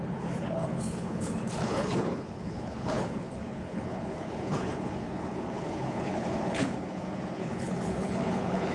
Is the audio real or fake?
fake